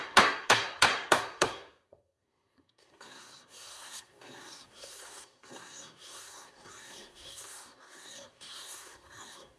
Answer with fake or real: fake